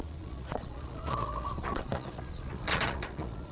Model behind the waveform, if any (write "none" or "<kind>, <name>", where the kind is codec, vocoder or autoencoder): vocoder, Vocos